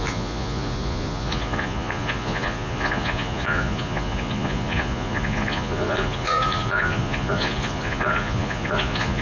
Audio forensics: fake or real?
fake